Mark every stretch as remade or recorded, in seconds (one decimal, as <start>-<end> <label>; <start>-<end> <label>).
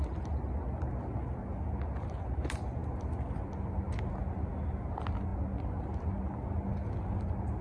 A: 0.0-7.6 recorded